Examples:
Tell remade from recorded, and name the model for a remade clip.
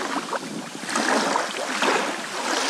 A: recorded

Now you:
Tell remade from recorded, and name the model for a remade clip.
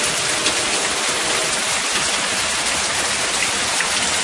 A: recorded